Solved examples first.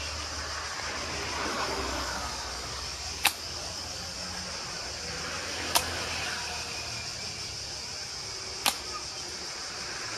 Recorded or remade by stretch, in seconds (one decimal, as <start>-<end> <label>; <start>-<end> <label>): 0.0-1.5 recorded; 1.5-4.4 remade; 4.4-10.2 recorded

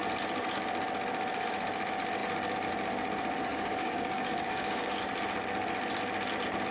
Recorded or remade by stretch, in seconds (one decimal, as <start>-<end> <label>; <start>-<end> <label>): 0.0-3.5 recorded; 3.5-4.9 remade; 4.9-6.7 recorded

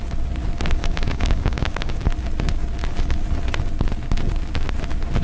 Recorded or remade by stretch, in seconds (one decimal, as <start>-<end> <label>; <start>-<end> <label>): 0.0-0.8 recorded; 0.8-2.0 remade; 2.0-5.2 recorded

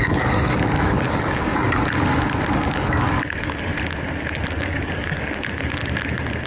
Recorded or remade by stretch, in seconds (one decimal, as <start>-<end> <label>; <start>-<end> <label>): 0.0-1.5 remade; 1.5-2.5 recorded; 2.5-3.7 remade; 3.7-4.6 recorded; 4.6-5.8 remade; 5.8-6.5 recorded